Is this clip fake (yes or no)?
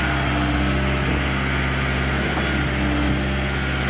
no